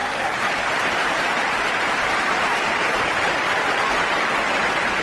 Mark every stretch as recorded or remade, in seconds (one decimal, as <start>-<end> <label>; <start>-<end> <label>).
0.0-3.0 remade; 3.0-5.0 recorded